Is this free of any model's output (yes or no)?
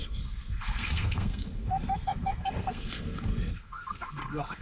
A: no